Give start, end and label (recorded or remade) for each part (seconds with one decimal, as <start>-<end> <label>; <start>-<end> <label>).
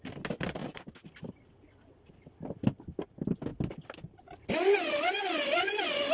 0.0-6.1 recorded